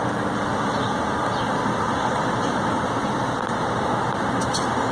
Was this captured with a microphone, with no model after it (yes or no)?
yes